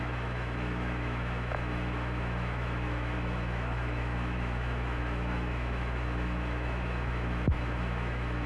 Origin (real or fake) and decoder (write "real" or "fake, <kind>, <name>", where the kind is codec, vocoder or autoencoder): fake, autoencoder, DAC-VAE